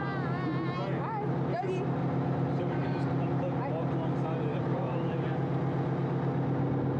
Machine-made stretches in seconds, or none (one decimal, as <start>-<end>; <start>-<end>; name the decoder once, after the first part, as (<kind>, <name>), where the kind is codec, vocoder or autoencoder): 2.0-3.2 (vocoder, BigVGAN v2); 4.5-5.1